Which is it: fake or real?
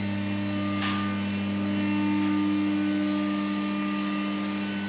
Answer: real